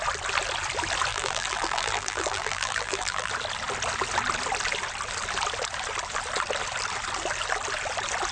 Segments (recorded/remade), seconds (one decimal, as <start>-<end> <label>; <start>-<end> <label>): 0.0-1.1 recorded; 1.1-3.3 remade; 3.3-8.3 recorded